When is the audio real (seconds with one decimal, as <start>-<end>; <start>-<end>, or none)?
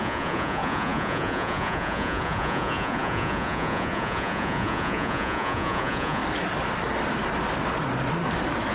6.2-8.7